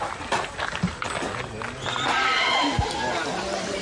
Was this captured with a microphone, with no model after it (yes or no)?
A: yes